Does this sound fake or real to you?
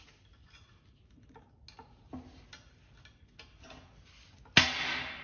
real